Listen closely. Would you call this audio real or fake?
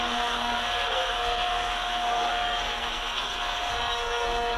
fake